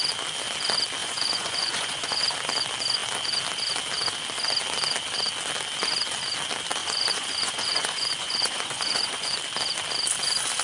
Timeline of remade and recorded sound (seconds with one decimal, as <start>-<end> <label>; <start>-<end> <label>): 0.0-1.0 recorded; 1.0-2.2 remade; 2.2-6.8 recorded; 6.8-9.3 remade; 9.3-10.6 recorded